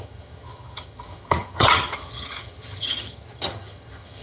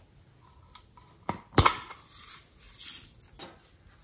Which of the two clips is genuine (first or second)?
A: second